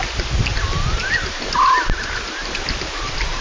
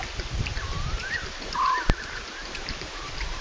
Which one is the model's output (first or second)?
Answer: second